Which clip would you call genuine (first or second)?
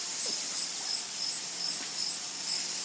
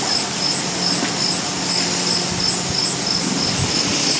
second